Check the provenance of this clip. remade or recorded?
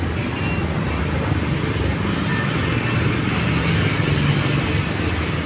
recorded